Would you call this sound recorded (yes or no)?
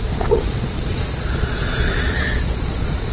no